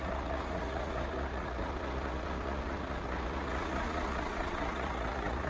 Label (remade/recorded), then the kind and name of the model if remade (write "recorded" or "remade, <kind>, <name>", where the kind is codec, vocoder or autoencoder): remade, vocoder, Vocos